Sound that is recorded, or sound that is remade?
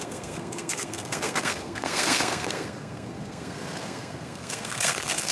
remade